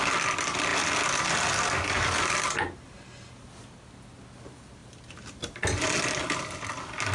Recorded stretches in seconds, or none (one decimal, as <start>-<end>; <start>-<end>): 0.0-7.1